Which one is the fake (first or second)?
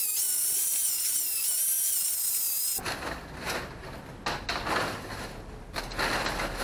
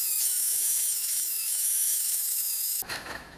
second